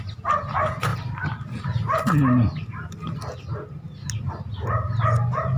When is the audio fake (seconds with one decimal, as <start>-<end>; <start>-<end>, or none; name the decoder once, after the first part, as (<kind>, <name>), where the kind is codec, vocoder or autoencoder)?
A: none